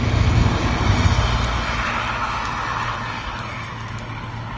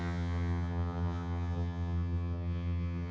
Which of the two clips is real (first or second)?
first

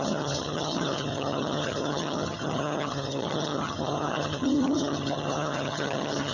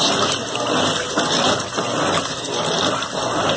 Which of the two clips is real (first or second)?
second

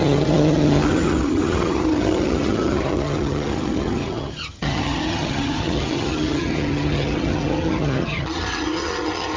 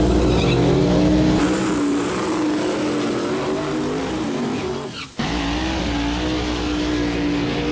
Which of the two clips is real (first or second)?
second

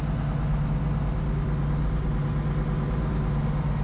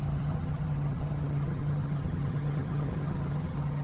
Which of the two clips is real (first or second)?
first